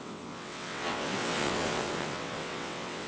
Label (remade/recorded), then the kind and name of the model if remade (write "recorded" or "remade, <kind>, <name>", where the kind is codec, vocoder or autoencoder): remade, vocoder, WaveNeXt